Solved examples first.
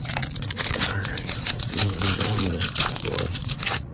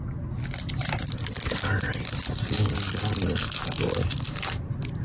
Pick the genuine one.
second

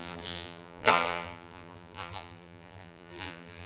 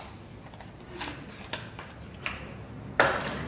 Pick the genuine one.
second